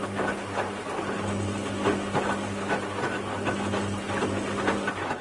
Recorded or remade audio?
recorded